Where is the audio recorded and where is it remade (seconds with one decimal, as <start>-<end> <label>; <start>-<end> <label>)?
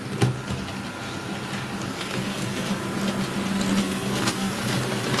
0.0-1.9 recorded; 1.9-2.8 remade; 2.8-3.8 recorded; 3.8-4.5 remade; 4.5-5.2 recorded